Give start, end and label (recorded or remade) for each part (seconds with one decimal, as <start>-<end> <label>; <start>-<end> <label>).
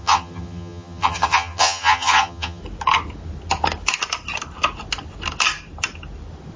0.0-2.6 remade; 2.6-6.6 recorded